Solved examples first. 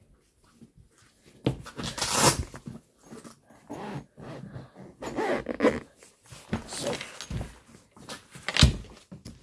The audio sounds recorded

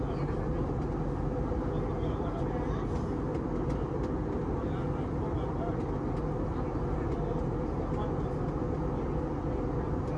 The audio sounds recorded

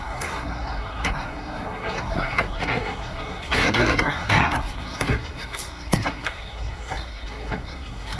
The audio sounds remade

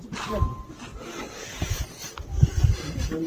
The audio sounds recorded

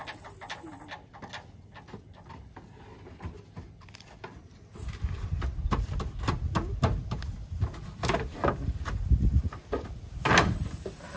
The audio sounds recorded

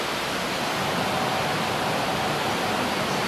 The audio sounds recorded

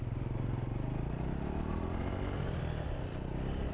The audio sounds recorded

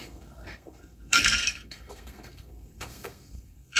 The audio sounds remade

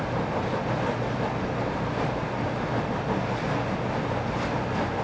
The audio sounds recorded